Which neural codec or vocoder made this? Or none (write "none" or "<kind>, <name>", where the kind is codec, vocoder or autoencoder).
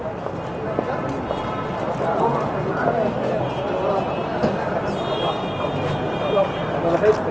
none